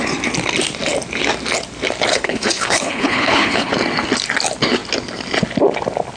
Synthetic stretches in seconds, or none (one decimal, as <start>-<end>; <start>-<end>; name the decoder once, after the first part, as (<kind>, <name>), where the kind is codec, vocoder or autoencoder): 2.1-3.7 (codec, HILCodec)